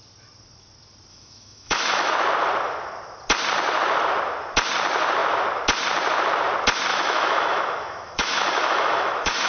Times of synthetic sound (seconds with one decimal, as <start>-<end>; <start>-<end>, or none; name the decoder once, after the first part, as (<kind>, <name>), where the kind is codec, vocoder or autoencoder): 1.1-2.1 (autoencoder, DAC-VAE); 6.9-9.5